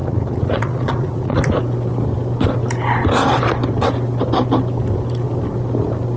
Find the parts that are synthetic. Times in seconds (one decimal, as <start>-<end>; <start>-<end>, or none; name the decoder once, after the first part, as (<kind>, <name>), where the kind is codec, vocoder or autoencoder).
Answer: 0.0-1.4 (vocoder, Vocos)

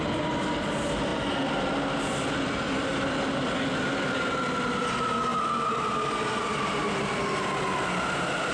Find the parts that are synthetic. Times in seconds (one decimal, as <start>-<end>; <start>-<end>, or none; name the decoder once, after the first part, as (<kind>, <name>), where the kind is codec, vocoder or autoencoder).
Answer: none

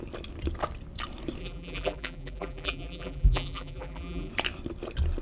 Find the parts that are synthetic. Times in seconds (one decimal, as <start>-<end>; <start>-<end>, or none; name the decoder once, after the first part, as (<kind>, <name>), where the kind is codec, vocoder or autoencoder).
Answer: 1.4-4.3 (vocoder, BigVGAN v2)

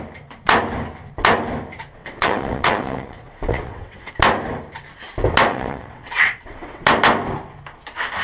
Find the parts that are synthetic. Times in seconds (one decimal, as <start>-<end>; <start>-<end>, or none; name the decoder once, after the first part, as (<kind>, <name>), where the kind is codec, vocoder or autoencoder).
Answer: 2.0-4.1 (vocoder, WaveNeXt); 5.5-6.8

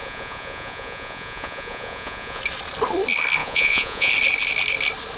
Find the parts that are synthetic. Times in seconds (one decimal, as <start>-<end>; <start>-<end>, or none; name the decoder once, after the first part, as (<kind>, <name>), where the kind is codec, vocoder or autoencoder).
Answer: 0.0-2.4 (vocoder, Vocos); 3.4-4.1

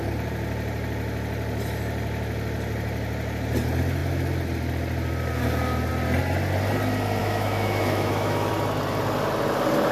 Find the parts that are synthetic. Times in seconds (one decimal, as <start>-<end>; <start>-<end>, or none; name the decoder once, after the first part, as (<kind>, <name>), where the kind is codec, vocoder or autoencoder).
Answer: 7.2-8.5 (autoencoder, DAC-VAE)